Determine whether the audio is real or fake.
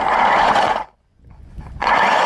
fake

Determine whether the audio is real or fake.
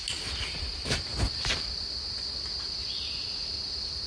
real